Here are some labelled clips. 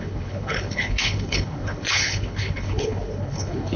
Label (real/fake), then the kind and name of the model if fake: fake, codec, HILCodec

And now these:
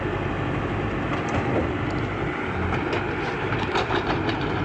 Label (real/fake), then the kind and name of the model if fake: real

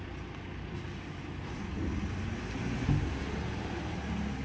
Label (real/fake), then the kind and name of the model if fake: real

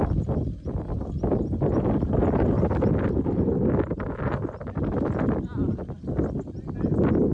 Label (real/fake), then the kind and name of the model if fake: real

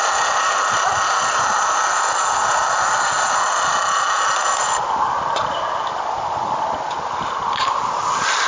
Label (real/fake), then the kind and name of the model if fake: real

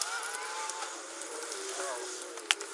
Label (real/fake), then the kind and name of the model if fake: real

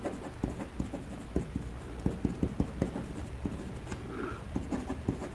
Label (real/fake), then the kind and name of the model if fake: real